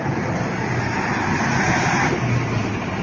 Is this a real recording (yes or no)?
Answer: yes